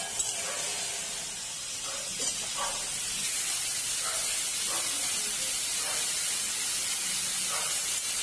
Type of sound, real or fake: real